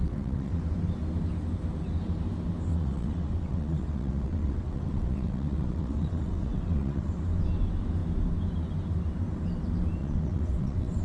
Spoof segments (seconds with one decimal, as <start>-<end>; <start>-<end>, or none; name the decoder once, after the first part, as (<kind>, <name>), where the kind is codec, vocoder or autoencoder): 0.0-0.6 (vocoder, WaveNeXt); 2.7-7.1; 10.0-11.0